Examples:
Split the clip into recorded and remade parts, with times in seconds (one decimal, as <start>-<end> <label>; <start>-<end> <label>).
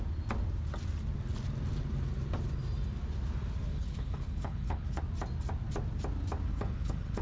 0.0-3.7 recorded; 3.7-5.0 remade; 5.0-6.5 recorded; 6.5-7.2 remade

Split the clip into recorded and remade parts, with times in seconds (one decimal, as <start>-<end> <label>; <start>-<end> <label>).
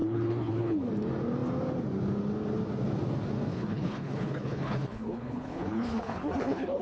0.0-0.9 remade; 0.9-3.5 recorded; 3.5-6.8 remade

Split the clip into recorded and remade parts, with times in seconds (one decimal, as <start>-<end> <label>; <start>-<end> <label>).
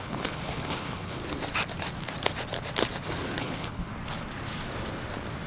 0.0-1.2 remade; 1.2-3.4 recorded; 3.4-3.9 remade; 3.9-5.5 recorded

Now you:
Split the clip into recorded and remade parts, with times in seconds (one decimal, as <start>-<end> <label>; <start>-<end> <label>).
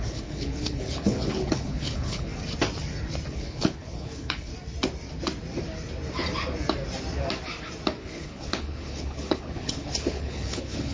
0.0-2.3 remade; 2.3-3.3 recorded; 3.3-4.5 remade; 4.5-8.0 recorded; 8.0-10.9 remade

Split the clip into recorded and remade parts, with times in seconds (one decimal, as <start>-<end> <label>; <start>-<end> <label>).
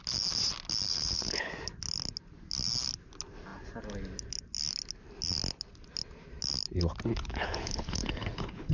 0.0-0.9 recorded; 0.9-1.5 remade; 1.5-7.1 recorded; 7.1-8.7 remade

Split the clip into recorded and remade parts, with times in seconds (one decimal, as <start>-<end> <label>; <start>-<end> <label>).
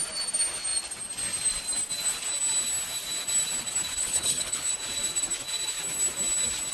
0.0-4.0 recorded; 4.0-4.7 remade; 4.7-6.7 recorded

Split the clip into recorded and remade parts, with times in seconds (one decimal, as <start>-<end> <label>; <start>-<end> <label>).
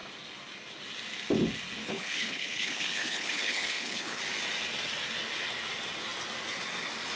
0.0-1.8 recorded; 1.8-4.2 remade; 4.2-7.2 recorded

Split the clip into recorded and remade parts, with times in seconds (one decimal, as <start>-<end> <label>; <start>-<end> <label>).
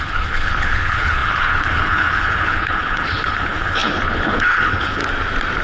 0.0-5.0 remade; 5.0-5.6 recorded